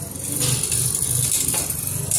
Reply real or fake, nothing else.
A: real